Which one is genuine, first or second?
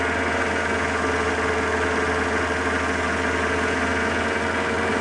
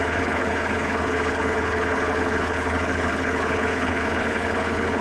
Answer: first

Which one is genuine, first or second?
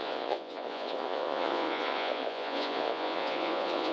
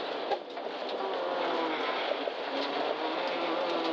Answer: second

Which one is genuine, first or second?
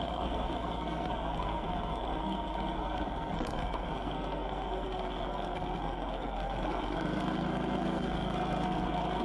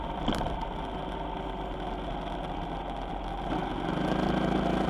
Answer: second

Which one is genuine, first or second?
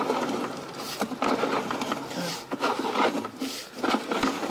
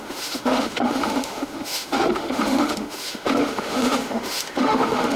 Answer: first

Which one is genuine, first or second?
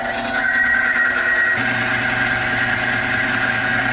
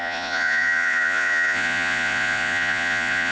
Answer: first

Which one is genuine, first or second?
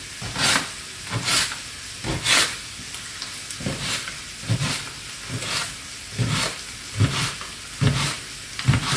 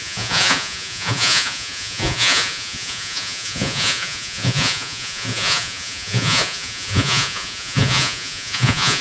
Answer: first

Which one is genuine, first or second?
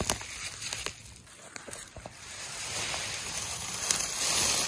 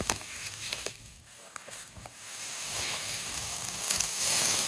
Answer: first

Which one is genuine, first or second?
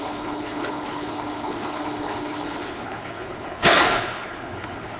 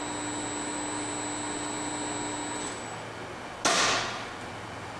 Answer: second